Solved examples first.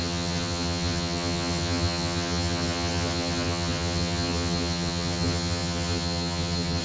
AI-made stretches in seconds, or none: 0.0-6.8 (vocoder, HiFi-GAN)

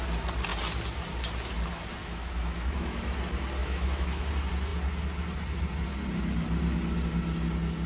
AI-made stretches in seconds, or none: 2.0-3.0 (autoencoder, DAC-VAE); 3.6-4.3